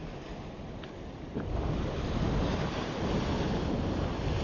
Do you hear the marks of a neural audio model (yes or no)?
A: no